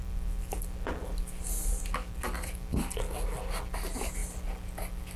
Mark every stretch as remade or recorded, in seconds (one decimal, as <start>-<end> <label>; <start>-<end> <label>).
0.0-5.2 recorded